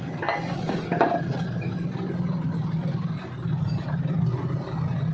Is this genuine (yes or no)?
yes